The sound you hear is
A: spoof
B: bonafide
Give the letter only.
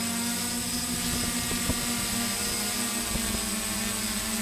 B